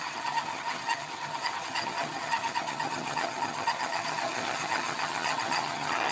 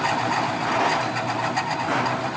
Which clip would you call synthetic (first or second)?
first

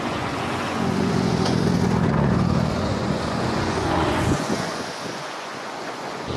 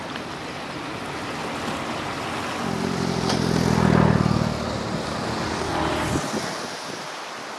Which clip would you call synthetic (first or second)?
first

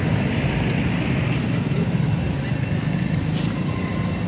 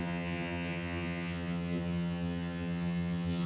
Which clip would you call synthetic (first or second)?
second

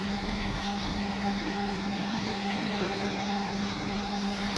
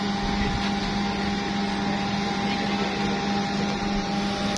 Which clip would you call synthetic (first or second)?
first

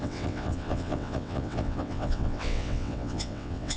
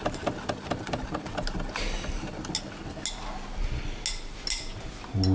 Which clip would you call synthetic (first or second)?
first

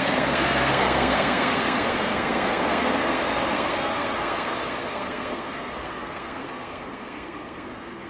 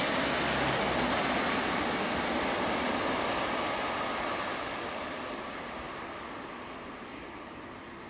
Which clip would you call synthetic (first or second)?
first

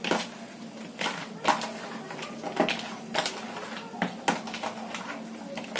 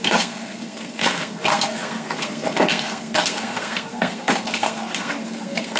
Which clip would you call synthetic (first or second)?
second